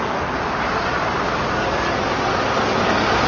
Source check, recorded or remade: recorded